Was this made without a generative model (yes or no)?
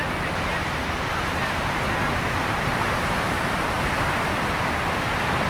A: yes